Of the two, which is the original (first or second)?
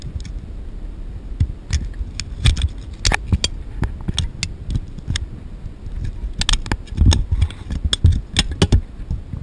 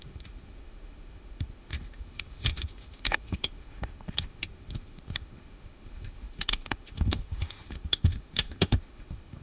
first